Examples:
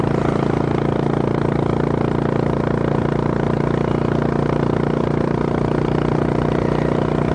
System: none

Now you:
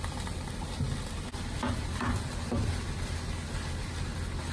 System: none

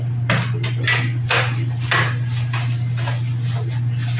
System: none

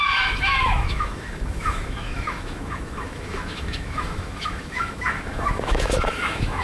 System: autoencoder, DAC-VAE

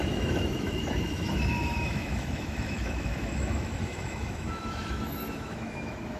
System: autoencoder, DAC-VAE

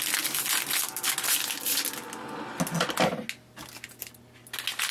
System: none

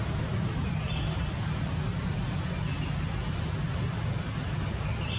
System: none